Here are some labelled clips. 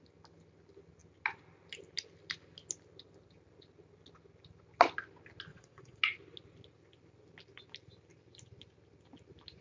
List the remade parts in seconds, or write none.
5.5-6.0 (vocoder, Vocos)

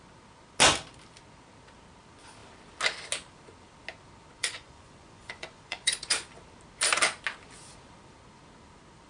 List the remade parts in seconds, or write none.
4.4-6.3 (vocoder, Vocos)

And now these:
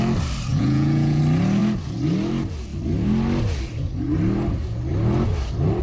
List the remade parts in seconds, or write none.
0.5-1.2 (vocoder, Vocos)

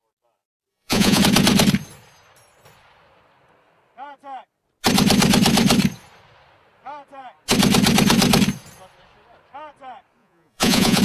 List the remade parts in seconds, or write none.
0.7-1.2 (vocoder, Vocos); 10.2-11.0

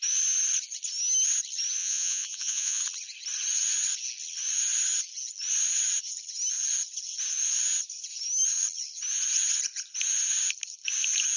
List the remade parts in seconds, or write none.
1.8-2.8 (vocoder, Vocos)

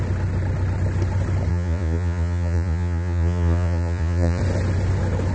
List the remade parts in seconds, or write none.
1.5-4.4 (vocoder, Vocos)

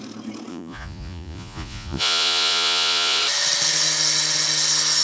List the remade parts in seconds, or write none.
0.5-3.2 (vocoder, Vocos)

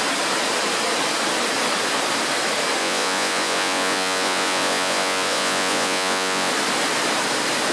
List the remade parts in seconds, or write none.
2.8-6.5 (vocoder, Vocos)